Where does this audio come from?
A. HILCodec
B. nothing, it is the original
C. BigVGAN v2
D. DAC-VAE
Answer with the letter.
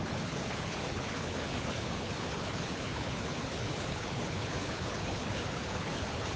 A